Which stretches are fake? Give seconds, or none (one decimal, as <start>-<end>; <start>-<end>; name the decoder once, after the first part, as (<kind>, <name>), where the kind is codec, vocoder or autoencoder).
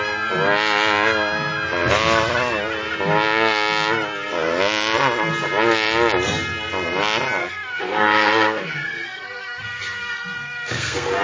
7.4-11.2 (codec, SNAC)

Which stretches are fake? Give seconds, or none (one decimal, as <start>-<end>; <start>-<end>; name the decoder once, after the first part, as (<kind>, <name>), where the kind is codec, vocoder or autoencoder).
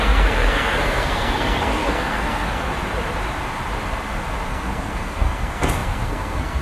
0.0-2.7 (codec, SNAC); 4.5-6.6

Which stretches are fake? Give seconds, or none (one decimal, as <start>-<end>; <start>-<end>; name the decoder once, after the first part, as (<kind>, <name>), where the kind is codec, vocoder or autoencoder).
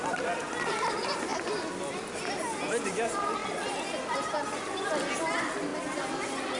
none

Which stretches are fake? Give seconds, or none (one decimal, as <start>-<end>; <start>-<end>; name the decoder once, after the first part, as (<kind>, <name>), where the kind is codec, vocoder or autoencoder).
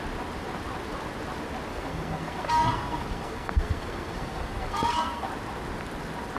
1.7-5.3 (codec, SNAC)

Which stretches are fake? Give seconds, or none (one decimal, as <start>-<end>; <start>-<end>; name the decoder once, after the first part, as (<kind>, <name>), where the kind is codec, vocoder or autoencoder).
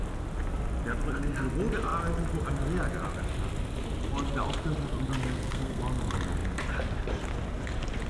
5.2-5.8 (codec, SNAC)